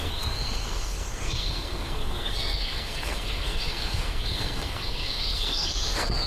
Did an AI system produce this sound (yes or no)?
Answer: yes